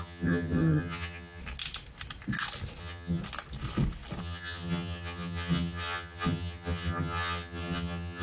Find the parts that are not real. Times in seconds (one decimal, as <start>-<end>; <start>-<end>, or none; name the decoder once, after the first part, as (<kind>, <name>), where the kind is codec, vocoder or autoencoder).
0.0-1.4 (vocoder, HiFi-GAN); 2.8-3.2; 4.2-8.2